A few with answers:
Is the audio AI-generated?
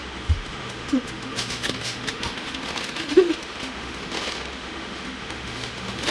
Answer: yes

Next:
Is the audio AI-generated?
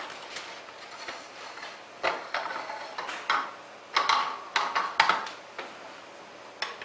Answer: no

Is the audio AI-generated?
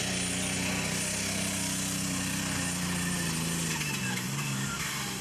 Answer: no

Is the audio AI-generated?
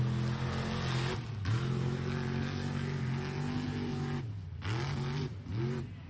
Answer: no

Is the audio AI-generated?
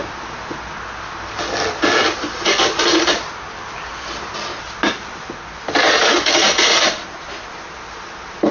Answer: no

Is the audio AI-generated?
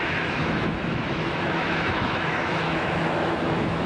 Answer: yes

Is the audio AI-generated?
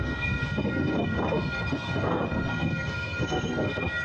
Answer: yes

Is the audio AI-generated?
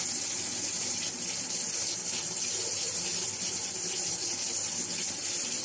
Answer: no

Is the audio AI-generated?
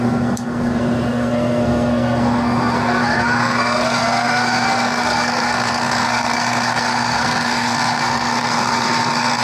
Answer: yes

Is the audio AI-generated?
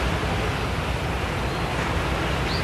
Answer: no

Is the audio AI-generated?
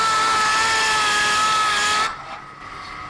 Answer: no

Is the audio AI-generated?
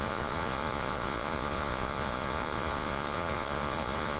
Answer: yes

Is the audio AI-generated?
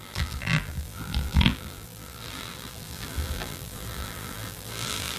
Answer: yes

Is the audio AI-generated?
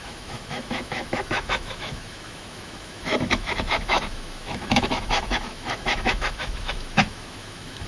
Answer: yes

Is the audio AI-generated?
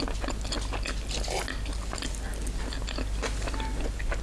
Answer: no